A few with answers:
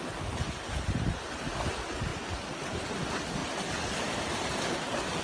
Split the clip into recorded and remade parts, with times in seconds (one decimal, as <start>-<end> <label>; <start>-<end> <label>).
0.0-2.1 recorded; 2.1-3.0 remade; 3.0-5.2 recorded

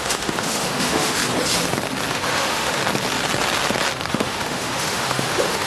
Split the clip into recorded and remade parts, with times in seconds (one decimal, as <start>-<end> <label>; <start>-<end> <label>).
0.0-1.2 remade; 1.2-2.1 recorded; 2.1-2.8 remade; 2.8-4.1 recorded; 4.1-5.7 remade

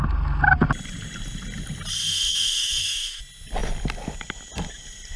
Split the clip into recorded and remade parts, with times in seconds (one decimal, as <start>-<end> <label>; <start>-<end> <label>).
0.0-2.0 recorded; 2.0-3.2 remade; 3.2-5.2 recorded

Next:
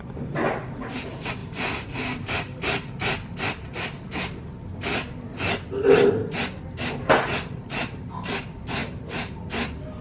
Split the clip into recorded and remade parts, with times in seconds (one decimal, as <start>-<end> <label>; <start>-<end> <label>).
0.0-10.0 recorded

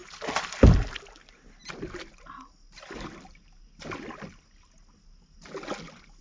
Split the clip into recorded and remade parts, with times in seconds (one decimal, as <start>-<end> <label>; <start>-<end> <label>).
0.0-6.2 recorded